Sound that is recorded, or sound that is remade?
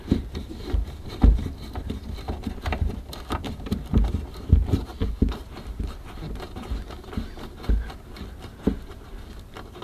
recorded